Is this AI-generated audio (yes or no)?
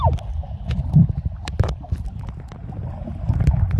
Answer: no